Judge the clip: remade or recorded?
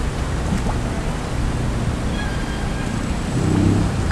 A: recorded